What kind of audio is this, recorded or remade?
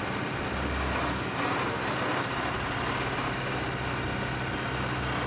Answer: recorded